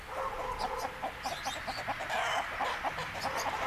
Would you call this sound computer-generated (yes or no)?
no